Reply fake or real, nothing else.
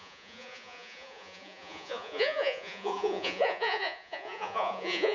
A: fake